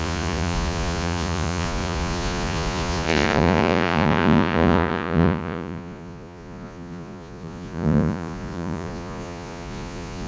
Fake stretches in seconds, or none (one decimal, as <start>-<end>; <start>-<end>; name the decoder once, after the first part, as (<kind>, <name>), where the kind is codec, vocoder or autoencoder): 0.0-10.3 (vocoder, Vocos)